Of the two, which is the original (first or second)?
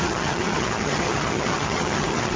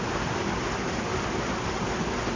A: second